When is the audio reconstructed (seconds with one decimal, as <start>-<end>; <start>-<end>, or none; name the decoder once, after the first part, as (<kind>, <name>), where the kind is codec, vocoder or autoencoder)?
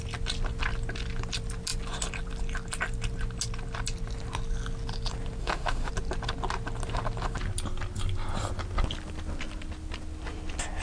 5.4-5.9 (autoencoder, DAC-VAE)